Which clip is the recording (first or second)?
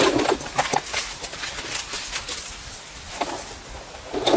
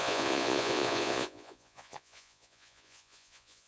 first